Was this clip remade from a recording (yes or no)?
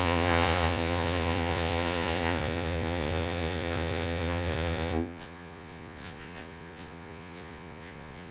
yes